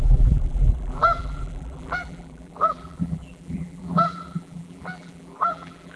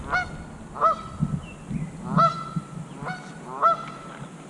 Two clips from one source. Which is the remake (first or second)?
first